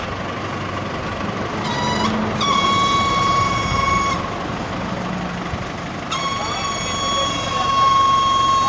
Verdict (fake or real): real